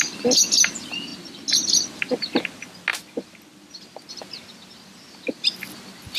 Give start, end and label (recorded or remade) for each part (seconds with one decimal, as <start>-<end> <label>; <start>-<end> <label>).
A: 0.0-6.2 recorded